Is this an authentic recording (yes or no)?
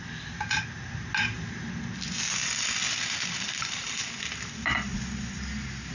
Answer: yes